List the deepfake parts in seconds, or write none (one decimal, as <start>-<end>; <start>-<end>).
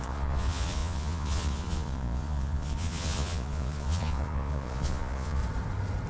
0.0-5.4